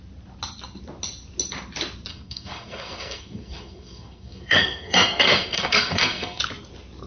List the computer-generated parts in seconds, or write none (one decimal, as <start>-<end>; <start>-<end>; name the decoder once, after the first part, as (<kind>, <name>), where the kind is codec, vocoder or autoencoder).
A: 2.1-6.4 (codec, SNAC)